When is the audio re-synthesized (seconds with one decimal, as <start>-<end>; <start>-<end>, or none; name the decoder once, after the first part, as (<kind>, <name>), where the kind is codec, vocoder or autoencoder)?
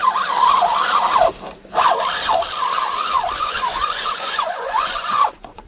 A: 3.4-5.7 (vocoder, Vocos)